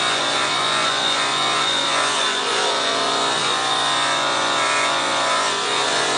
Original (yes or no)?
no